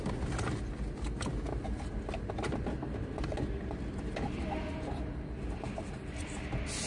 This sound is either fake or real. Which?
real